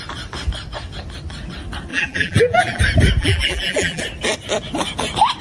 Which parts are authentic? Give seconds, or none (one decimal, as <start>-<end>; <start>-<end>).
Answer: 0.0-1.9; 2.8-3.2; 4.0-5.4